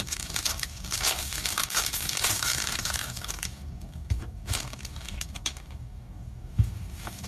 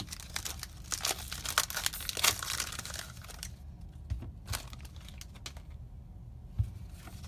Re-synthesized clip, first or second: first